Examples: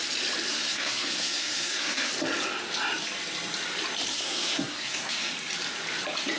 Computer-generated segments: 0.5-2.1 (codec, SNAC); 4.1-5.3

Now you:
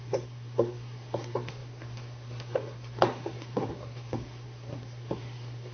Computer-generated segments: 0.0-5.7 (codec, SNAC)

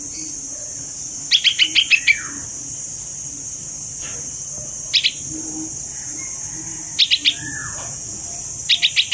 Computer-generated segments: 7.6-8.2 (vocoder, Vocos)

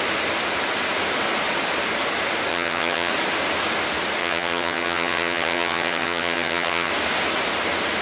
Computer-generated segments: 2.5-3.1 (vocoder, HiFi-GAN); 4.2-6.9

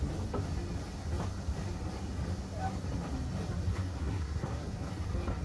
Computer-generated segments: 3.7-4.9 (codec, SNAC)

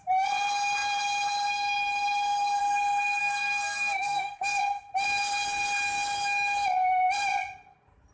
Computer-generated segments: 3.2-4.6 (codec, SNAC)

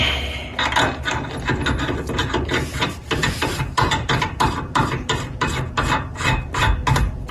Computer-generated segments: 2.2-6.6 (vocoder, BigVGAN v2)

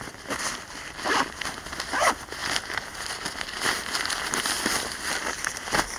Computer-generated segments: none